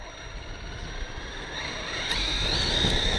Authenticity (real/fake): real